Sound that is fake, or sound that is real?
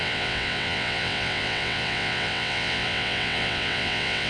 fake